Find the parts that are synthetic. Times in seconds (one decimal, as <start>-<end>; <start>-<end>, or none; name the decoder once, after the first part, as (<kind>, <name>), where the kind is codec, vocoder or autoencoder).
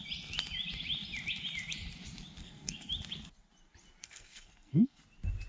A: 2.4-2.9 (codec, SNAC); 4.0-5.0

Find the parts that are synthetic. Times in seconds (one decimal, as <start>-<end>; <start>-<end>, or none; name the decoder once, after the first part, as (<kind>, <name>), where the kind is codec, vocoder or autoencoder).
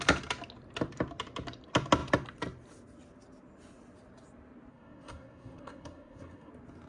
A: 4.7-6.5 (codec, SNAC)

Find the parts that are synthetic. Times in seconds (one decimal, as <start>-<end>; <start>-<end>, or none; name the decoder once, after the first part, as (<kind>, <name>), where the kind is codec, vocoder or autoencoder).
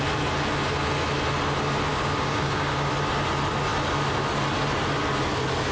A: 1.9-2.9 (codec, DAC)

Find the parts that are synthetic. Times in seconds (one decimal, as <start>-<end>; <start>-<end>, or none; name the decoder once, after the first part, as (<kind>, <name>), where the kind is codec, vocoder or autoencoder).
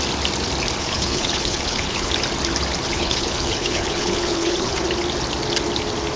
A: 0.8-2.1 (codec, HILCodec); 2.9-4.8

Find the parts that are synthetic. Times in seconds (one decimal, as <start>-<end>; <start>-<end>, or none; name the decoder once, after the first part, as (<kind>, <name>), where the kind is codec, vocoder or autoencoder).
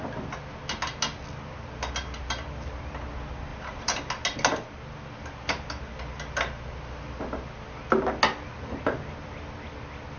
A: 3.5-4.1 (vocoder, BigVGAN v2)